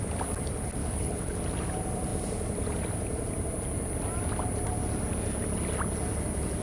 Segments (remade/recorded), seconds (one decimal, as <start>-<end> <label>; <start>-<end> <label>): 0.0-0.8 recorded; 0.8-1.4 remade; 1.4-6.6 recorded